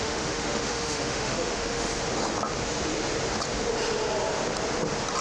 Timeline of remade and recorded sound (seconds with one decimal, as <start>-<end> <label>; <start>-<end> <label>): 0.0-1.9 remade; 1.9-5.2 recorded